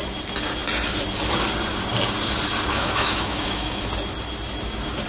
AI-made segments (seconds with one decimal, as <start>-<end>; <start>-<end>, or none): 2.7-3.9